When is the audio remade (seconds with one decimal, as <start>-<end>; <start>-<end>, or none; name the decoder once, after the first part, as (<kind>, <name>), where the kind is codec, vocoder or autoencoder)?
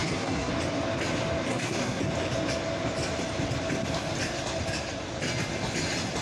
0.0-0.5 (codec, SNAC); 1.5-2.0